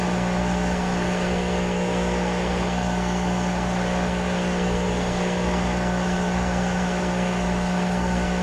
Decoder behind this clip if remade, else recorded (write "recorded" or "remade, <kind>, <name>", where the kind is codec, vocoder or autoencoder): remade, codec, SNAC